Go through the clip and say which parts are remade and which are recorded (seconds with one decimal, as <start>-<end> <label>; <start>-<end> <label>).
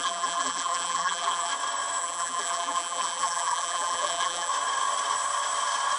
0.0-1.5 remade; 1.5-2.0 recorded; 2.0-4.5 remade; 4.5-6.0 recorded